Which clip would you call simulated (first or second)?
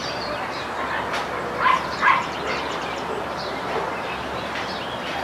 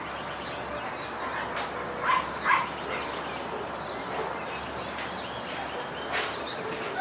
first